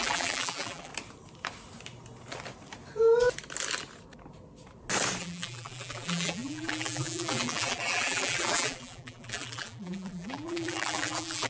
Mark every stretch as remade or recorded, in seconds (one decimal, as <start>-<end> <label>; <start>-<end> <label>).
0.0-0.9 remade; 0.9-5.2 recorded; 5.2-11.5 remade